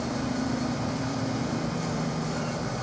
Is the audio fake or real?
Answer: fake